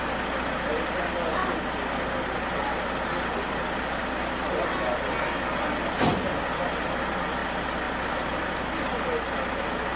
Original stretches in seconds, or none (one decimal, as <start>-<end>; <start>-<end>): 0.0-10.0